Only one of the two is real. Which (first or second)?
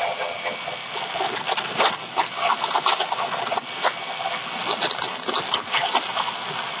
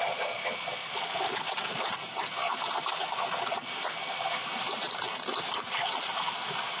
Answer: first